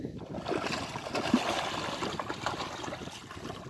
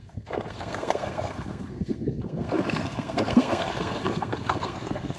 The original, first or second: first